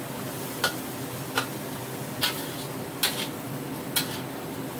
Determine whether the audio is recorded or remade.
recorded